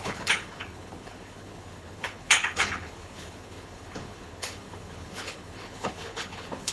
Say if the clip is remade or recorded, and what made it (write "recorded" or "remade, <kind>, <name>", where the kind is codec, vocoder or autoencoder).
remade, codec, HILCodec